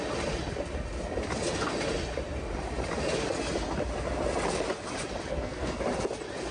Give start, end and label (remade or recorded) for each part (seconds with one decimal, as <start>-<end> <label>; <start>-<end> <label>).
0.0-5.3 recorded; 5.3-5.8 remade; 5.8-6.5 recorded